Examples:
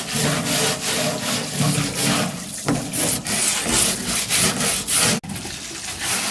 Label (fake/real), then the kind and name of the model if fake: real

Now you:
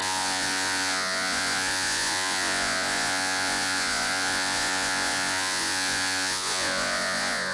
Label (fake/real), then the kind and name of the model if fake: fake, vocoder, Vocos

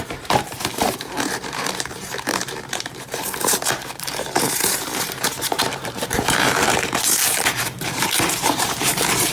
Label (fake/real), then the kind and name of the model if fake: fake, vocoder, BigVGAN v2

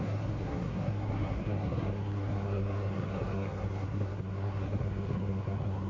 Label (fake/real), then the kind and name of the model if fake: fake, codec, SNAC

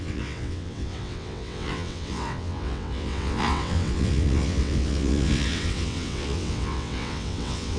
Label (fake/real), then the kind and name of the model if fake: fake, vocoder, WaveNeXt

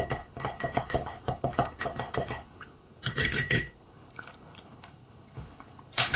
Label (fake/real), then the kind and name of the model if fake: fake, codec, HILCodec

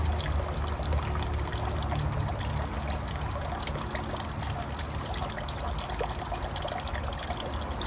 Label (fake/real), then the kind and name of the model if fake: real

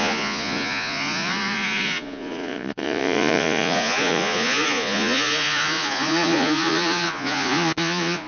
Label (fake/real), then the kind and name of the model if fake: fake, vocoder, Vocos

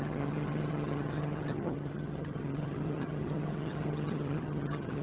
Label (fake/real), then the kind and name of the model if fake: fake, vocoder, HiFi-GAN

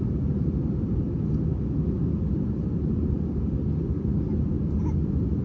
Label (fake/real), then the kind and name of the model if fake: real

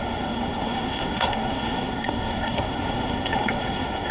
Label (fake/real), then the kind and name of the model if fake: fake, codec, SNAC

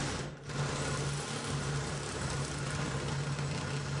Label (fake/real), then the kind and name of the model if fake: real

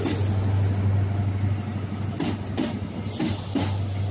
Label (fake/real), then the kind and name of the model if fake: real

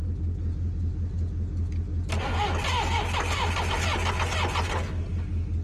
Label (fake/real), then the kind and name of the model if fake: real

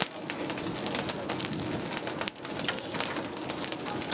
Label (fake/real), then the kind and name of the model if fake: real